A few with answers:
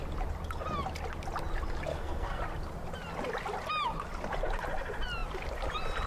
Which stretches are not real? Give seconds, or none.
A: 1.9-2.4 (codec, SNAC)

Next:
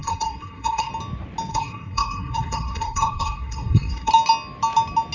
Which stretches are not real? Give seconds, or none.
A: 0.0-0.9 (codec, SNAC); 1.5-4.1

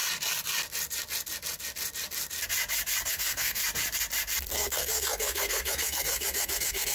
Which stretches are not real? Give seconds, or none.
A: 3.1-3.6 (codec, SNAC); 4.5-6.9

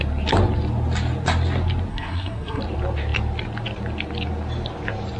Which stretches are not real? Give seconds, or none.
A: 1.9-2.6 (codec, SNAC)

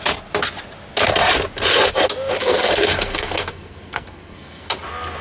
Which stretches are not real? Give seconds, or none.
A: 2.4-4.7 (codec, SNAC)

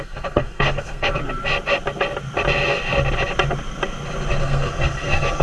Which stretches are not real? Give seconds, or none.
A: 0.0-1.2 (codec, SNAC); 4.4-5.4

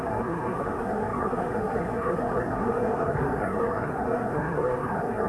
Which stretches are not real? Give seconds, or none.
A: 0.0-5.3 (codec, SNAC)

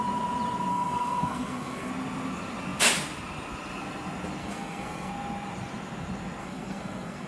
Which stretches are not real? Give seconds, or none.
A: 0.7-1.9 (codec, SNAC); 4.4-5.1; 6.4-7.3